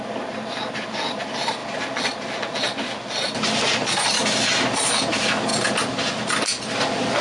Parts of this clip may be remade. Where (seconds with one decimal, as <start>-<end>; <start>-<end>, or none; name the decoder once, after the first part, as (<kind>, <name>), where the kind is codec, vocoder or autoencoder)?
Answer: none